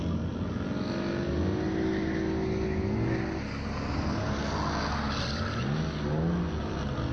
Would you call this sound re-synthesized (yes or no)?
no